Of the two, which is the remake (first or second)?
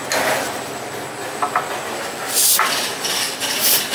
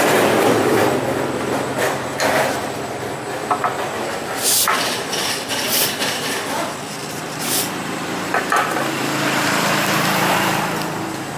second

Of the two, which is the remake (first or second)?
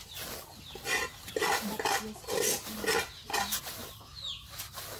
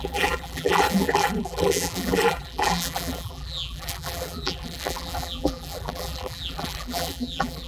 second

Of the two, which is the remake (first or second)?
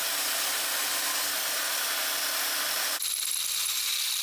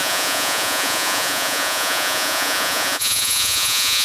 second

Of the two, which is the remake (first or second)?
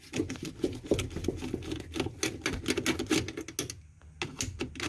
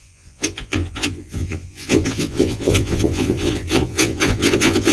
second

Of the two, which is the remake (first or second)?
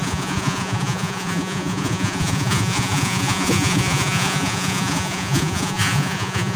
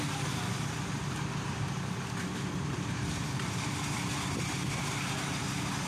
first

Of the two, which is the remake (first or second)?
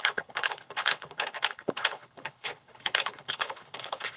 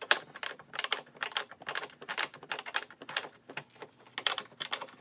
first